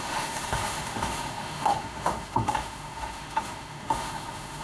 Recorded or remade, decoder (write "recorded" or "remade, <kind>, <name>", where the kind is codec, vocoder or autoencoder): remade, autoencoder, DAC-VAE